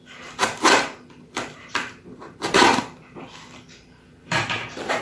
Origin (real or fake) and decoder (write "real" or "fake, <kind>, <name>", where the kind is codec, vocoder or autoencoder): fake, vocoder, BigVGAN v2